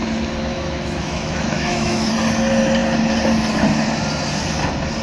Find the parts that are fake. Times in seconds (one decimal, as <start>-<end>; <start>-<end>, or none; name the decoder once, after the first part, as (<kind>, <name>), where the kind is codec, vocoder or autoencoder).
0.5-2.1 (autoencoder, DAC-VAE)